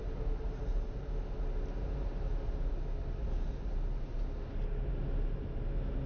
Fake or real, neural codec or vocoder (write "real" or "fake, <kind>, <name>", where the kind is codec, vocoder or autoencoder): real